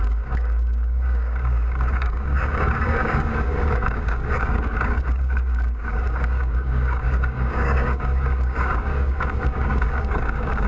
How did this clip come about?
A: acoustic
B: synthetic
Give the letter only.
B